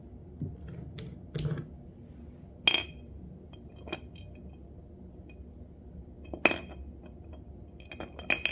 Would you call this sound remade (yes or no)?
no